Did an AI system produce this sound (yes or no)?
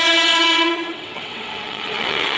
yes